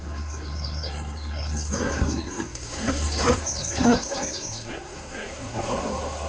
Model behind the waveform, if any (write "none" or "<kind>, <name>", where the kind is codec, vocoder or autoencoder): codec, SNAC